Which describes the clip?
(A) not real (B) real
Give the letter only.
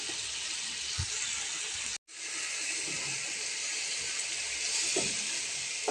B